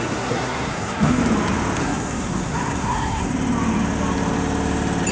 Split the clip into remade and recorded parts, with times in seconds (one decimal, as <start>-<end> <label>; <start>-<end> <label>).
0.0-1.2 remade; 1.2-1.8 recorded; 1.8-3.3 remade; 3.3-5.1 recorded